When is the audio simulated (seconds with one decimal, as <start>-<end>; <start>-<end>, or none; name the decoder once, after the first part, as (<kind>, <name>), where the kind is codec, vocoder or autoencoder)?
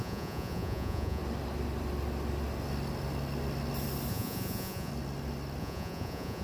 0.0-1.2 (vocoder, Vocos); 4.1-4.9; 5.6-6.4